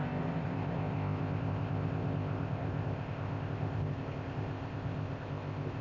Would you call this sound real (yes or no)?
no